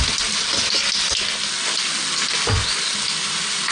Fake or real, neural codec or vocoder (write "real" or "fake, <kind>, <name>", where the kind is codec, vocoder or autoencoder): real